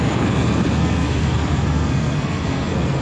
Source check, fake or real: fake